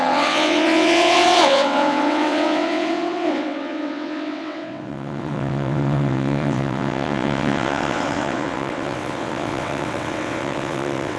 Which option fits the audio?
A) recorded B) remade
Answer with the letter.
B